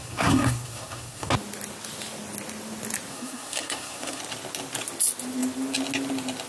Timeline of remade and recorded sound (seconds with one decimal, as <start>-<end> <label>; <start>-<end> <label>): 0.0-1.3 remade; 1.3-3.1 recorded; 3.1-4.2 remade; 4.2-6.5 recorded